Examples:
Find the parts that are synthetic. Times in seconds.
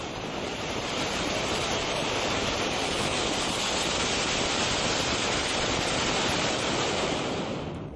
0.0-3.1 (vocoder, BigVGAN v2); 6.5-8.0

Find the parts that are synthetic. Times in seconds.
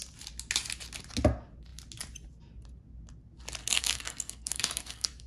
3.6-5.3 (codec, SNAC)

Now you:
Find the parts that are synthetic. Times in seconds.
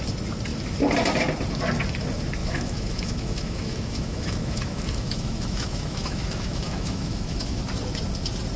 2.4-7.6 (autoencoder, DAC-VAE)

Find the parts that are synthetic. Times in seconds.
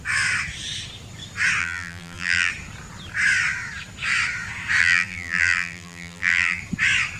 1.6-2.5 (vocoder, BigVGAN v2); 4.8-6.6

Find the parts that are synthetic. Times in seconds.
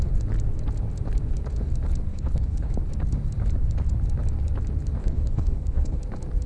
2.1-2.7 (codec, HILCodec); 5.0-6.0